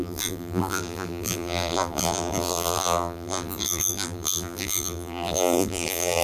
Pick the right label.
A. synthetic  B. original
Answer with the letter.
A